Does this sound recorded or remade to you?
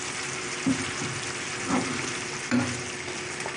remade